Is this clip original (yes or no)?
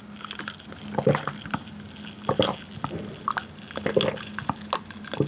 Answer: yes